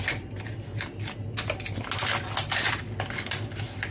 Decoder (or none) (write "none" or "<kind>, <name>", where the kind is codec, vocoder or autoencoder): none